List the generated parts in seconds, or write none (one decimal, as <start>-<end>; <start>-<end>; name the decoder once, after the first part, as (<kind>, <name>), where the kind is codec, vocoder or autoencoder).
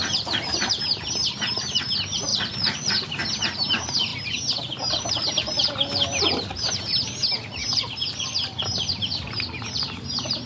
0.0-2.3 (vocoder, BigVGAN v2); 2.9-4.1; 6.6-7.6; 8.6-10.5